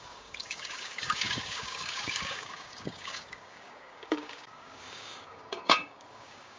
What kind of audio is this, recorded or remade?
remade